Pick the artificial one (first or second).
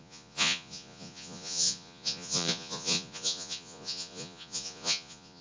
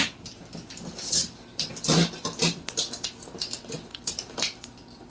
first